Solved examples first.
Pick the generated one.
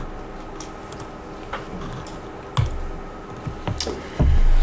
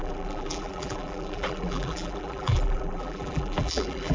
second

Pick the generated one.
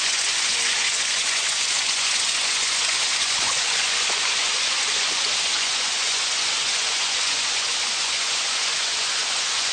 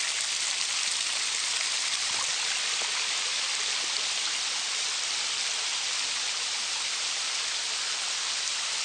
first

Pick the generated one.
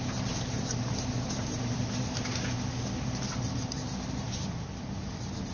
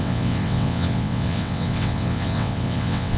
second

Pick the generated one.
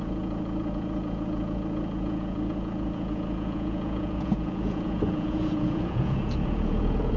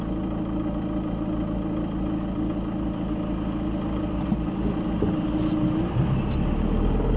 first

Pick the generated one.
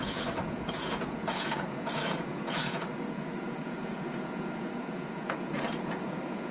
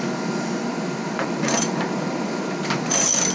first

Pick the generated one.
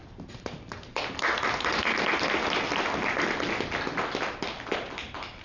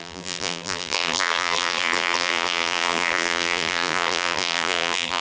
second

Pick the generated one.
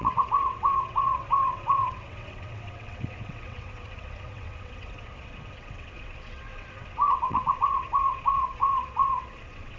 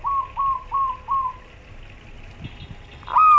first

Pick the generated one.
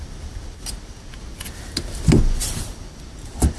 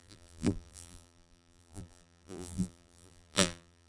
second